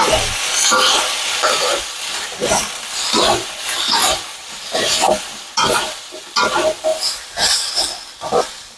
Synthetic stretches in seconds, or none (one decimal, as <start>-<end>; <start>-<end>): none